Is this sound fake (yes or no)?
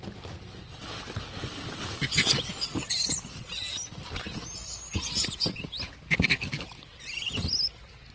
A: no